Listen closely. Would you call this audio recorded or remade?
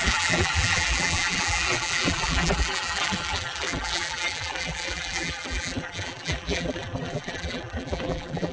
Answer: remade